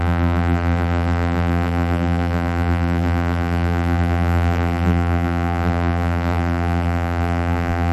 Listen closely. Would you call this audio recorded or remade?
remade